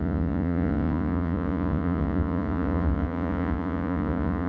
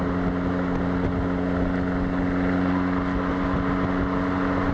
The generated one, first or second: first